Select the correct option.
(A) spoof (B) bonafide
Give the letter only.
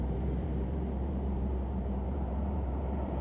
A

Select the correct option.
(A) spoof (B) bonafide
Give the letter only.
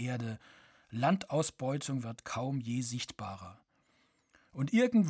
B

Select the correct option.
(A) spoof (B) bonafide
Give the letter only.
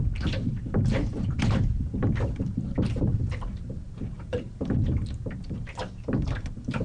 A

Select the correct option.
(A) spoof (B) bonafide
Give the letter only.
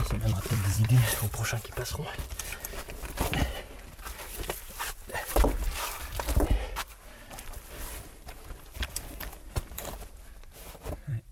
A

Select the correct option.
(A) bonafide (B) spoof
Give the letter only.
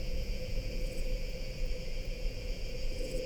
B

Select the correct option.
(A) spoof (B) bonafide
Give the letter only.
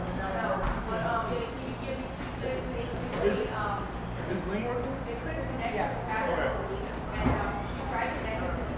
B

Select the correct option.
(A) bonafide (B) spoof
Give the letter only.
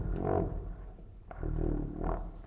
A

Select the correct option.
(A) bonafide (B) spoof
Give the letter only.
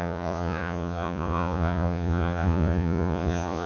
B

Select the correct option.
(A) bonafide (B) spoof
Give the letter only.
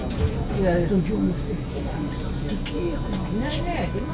A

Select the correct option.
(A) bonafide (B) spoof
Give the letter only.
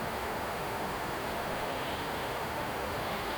B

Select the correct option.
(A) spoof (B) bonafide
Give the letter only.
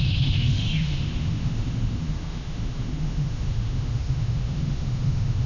A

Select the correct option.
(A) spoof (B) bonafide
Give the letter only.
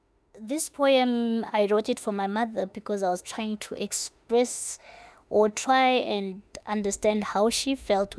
A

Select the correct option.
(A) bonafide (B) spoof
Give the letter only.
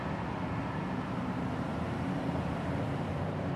B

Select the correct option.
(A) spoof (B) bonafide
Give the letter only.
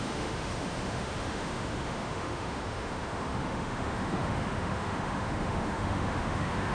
A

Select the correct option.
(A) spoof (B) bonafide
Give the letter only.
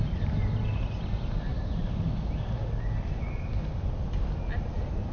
B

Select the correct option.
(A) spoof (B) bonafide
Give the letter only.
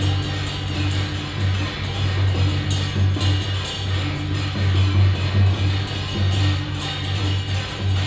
B